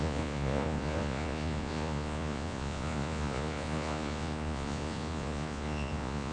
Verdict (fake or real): fake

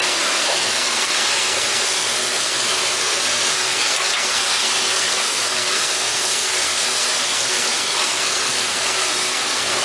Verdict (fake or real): fake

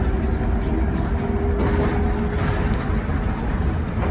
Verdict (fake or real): real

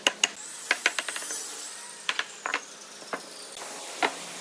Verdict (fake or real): real